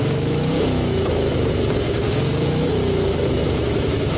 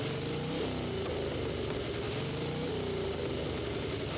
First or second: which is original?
second